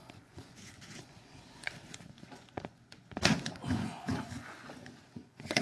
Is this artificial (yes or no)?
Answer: yes